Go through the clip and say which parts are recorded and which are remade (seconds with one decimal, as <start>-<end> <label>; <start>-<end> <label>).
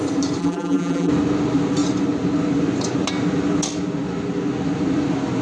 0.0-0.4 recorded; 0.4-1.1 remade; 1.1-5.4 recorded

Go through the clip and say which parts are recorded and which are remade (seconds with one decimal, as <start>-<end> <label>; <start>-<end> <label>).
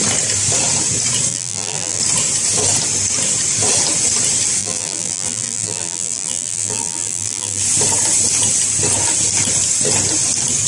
0.0-1.3 recorded; 1.3-2.0 remade; 2.0-4.6 recorded; 4.6-7.6 remade; 7.6-10.7 recorded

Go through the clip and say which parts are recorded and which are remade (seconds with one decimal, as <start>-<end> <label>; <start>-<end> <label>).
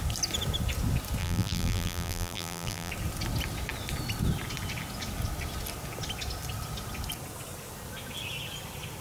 0.0-1.2 recorded; 1.2-2.9 remade; 2.9-9.0 recorded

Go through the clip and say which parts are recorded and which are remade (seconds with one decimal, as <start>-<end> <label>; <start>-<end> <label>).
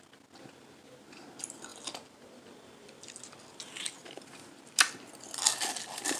0.0-4.0 recorded; 4.0-5.1 remade; 5.1-6.2 recorded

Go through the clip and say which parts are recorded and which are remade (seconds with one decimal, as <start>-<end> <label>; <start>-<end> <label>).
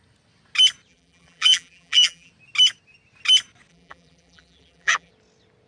0.0-0.9 recorded; 0.9-2.3 remade; 2.3-3.7 recorded; 3.7-5.1 remade; 5.1-5.7 recorded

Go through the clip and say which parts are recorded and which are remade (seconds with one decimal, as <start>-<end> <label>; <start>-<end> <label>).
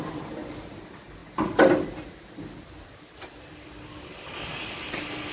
0.0-5.3 recorded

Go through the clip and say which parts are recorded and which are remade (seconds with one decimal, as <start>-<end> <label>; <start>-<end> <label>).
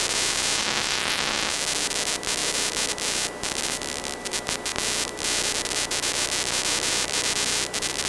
0.0-0.6 recorded; 0.6-1.3 remade; 1.3-8.1 recorded